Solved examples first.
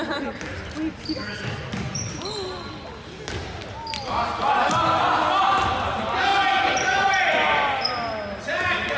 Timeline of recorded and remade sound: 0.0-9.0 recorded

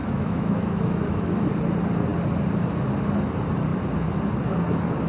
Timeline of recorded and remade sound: 0.0-1.5 remade; 1.5-5.1 recorded

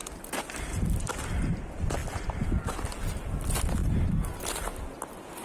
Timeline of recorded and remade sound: 0.0-2.0 recorded; 2.0-2.6 remade; 2.6-3.8 recorded; 3.8-4.8 remade; 4.8-5.4 recorded

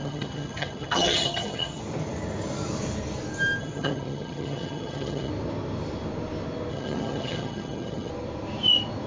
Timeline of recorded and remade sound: 0.0-1.8 remade; 1.8-3.6 recorded; 3.6-5.3 remade; 5.3-6.7 recorded; 6.7-8.1 remade; 8.1-9.1 recorded

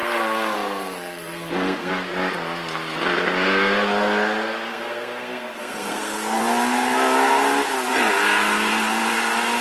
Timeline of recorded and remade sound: 0.0-1.9 remade; 1.9-4.7 recorded; 4.7-6.4 remade; 6.4-9.6 recorded